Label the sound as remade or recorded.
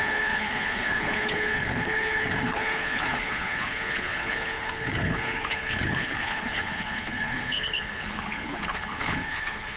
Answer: remade